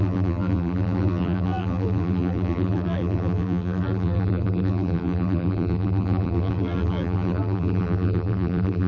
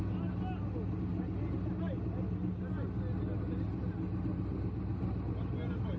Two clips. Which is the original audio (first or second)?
second